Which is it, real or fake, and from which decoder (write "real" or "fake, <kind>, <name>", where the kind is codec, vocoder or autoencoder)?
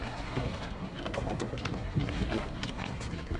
fake, codec, SNAC